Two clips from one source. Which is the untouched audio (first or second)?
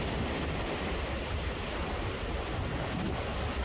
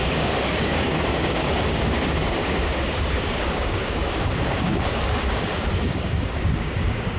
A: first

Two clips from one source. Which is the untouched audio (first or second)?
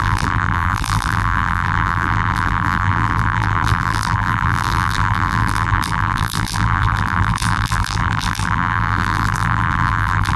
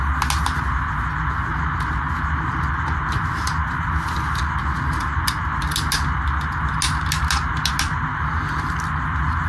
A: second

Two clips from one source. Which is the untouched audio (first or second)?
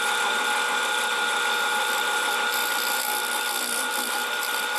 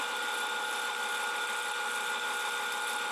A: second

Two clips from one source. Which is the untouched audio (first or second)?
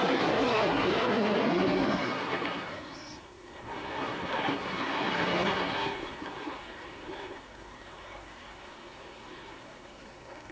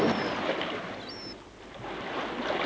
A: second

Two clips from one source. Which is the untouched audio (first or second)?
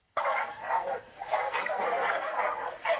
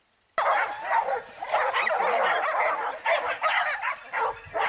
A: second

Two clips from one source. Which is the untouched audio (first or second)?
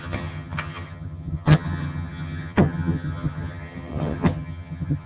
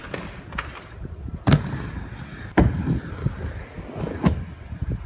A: second